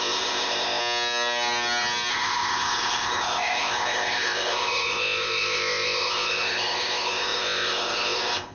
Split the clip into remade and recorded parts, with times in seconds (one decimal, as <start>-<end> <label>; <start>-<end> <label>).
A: 0.0-0.8 remade; 0.8-2.1 recorded; 2.1-8.5 remade

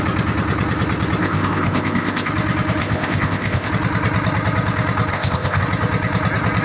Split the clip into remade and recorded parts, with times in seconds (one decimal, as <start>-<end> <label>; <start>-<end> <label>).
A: 0.0-1.2 recorded; 1.2-2.3 remade; 2.3-2.8 recorded; 2.8-3.7 remade; 3.7-5.1 recorded; 5.1-5.6 remade; 5.6-6.6 recorded